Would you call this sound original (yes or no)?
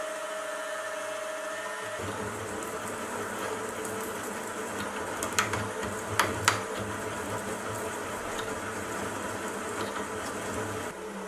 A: yes